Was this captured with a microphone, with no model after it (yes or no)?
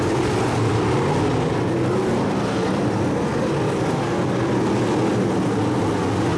yes